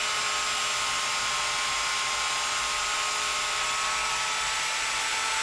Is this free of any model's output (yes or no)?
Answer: yes